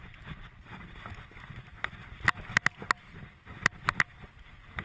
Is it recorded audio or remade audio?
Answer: recorded